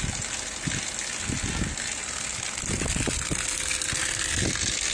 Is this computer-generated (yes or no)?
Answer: no